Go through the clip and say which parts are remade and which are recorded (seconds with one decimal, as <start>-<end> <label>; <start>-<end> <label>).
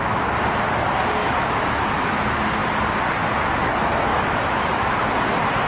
0.0-1.2 recorded; 1.2-2.2 remade; 2.2-4.1 recorded; 4.1-4.9 remade; 4.9-5.7 recorded